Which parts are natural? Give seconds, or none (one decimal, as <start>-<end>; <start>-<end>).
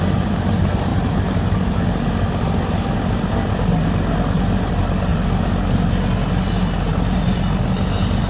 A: 0.0-8.3